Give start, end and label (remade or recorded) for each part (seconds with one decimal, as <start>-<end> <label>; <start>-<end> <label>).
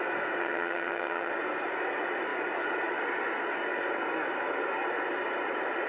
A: 0.0-0.4 recorded; 0.4-1.3 remade; 1.3-5.9 recorded